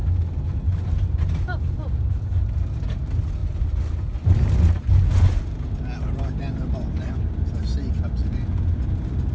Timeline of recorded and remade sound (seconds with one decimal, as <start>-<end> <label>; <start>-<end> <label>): 0.0-9.3 recorded